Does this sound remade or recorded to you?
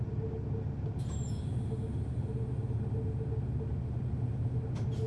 recorded